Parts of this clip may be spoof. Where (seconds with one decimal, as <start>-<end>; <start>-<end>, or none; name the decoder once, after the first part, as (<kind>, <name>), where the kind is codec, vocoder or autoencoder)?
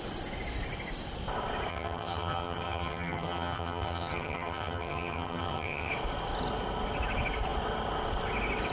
1.7-5.9 (vocoder, HiFi-GAN)